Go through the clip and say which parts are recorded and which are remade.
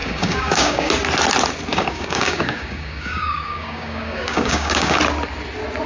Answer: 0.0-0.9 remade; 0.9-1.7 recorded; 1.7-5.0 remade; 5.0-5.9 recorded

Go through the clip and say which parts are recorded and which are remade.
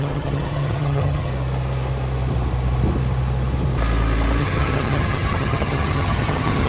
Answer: 0.0-1.3 remade; 1.3-4.4 recorded; 4.4-6.7 remade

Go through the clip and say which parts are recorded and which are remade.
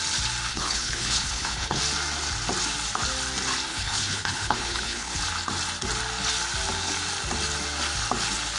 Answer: 0.0-0.5 recorded; 0.5-1.8 remade; 1.8-3.7 recorded; 3.7-5.2 remade; 5.2-8.6 recorded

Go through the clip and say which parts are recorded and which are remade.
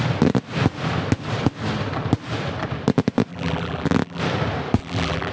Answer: 0.0-3.3 recorded; 3.3-4.2 remade; 4.2-4.8 recorded; 4.8-5.3 remade